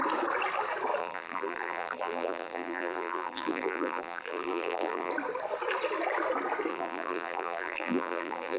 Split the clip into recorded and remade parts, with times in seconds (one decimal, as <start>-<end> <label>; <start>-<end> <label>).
0.0-1.0 recorded; 1.0-5.1 remade; 5.1-6.7 recorded; 6.7-8.6 remade